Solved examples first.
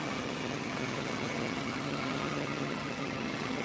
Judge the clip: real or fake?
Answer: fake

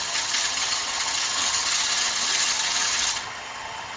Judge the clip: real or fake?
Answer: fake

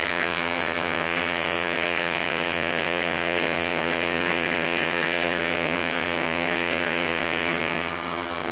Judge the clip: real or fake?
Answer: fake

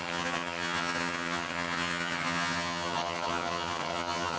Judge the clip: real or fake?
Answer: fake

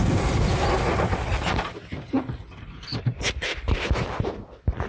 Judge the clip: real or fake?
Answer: real